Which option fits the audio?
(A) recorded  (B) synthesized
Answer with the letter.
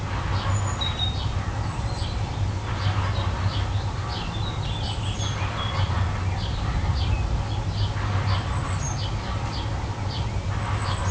A